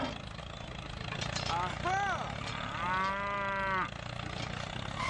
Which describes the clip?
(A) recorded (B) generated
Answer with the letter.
A